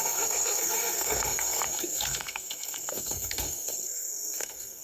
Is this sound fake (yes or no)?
yes